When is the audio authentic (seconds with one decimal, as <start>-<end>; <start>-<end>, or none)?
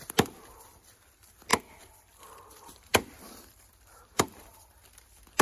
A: 1.5-2.2